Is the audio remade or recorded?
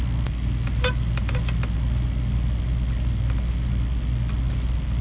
recorded